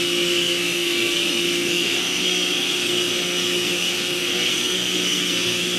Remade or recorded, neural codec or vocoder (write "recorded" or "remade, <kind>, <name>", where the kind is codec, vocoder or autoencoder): remade, codec, SNAC